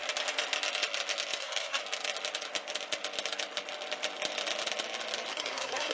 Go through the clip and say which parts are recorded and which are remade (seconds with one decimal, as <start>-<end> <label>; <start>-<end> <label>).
0.0-1.4 recorded; 1.4-1.8 remade; 1.8-5.3 recorded; 5.3-5.9 remade